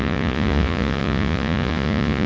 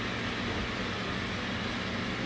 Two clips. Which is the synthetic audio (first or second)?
first